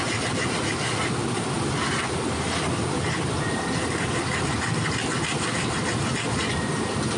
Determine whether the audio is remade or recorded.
recorded